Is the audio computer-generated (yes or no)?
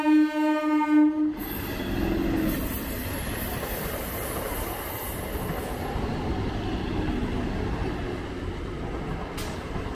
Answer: no